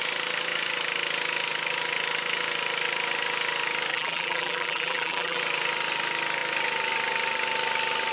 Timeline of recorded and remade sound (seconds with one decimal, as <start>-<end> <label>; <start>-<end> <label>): 0.0-3.9 recorded; 3.9-5.4 remade; 5.4-8.1 recorded